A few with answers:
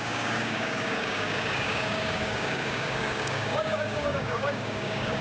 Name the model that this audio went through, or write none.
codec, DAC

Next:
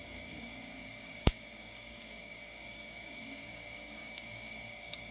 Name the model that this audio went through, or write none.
codec, DAC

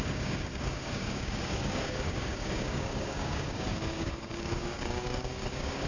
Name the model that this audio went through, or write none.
codec, DAC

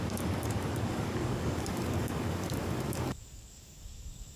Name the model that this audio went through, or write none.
codec, DAC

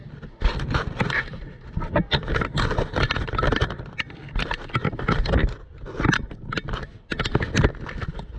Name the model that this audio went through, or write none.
none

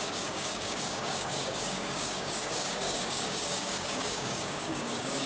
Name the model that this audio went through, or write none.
codec, DAC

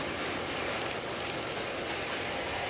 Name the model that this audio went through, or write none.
none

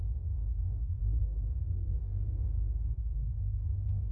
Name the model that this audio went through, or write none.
codec, DAC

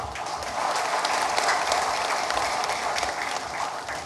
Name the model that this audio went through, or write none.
none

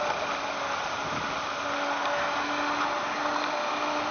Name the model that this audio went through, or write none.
none